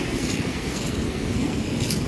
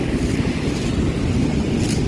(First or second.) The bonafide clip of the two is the second